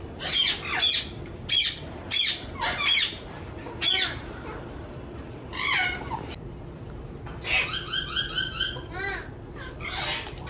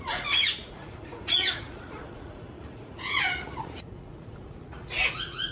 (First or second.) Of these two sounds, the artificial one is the second